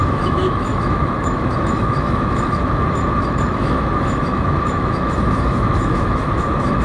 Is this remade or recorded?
remade